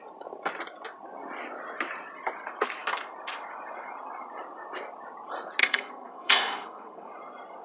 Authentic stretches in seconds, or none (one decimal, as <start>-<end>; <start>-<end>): 0.0-5.6; 7.1-7.6

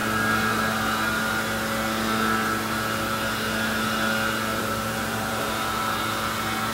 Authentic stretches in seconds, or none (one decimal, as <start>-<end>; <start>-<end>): 0.0-4.5; 5.5-6.7

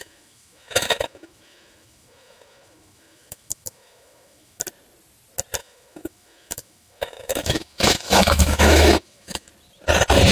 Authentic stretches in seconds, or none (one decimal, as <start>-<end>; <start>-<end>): 4.6-5.6; 9.5-10.3

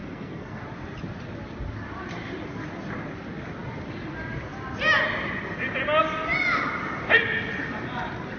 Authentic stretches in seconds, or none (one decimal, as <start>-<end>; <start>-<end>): 0.6-8.4

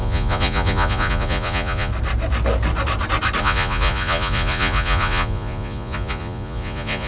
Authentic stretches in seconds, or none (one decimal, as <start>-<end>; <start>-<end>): 1.9-3.4

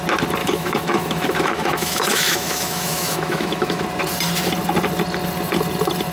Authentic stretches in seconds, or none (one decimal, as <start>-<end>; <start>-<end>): 0.0-0.4; 3.8-6.1

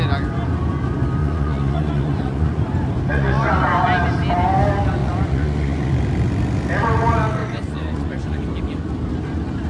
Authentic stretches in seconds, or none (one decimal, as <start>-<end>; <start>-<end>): 0.0-1.2; 2.6-3.1; 3.9-5.0; 5.9-7.4; 8.4-9.7

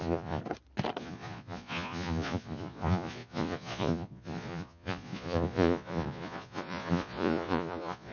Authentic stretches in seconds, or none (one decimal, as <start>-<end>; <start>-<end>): 0.4-1.0